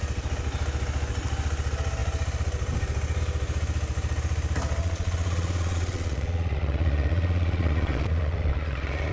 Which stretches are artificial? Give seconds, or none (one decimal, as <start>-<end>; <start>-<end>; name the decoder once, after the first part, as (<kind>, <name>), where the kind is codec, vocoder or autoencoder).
4.8-9.1 (vocoder, Vocos)